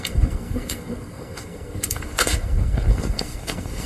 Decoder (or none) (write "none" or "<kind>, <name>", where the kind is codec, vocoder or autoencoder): codec, SNAC